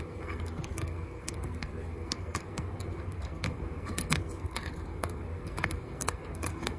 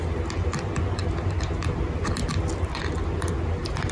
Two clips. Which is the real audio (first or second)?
second